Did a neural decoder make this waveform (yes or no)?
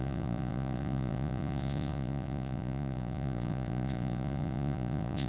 yes